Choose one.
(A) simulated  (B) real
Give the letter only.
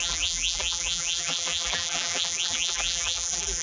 A